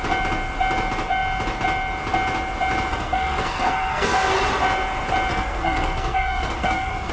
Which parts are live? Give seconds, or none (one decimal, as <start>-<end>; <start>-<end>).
0.0-2.9; 4.4-5.3